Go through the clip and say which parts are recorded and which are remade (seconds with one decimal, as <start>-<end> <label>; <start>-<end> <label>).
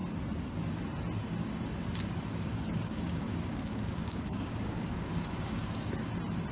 0.0-2.3 recorded; 2.3-5.9 remade; 5.9-6.5 recorded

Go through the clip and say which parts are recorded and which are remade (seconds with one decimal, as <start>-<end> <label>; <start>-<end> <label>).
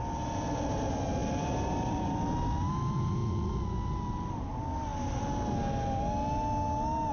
0.0-7.1 recorded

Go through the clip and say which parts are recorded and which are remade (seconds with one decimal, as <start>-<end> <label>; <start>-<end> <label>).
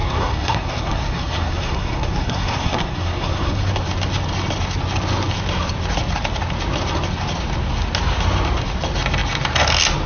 0.0-3.6 remade; 3.6-10.1 recorded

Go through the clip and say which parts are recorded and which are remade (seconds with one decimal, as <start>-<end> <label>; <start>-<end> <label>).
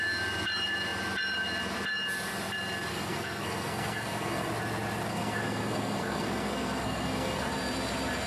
0.0-2.9 recorded; 2.9-4.5 remade; 4.5-5.1 recorded; 5.1-7.5 remade; 7.5-8.3 recorded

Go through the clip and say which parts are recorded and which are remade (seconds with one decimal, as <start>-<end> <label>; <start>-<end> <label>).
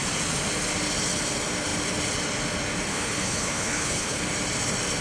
0.0-2.9 recorded; 2.9-4.2 remade; 4.2-5.0 recorded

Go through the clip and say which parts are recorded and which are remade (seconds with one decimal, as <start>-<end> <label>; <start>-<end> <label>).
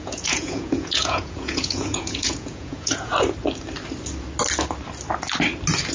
0.0-3.1 remade; 3.1-5.9 recorded